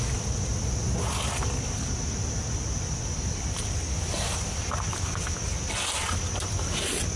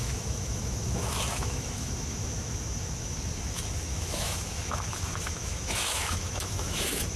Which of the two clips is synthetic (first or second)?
second